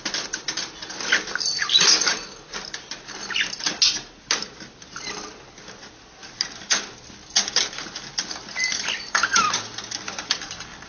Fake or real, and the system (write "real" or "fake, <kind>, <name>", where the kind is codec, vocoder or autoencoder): real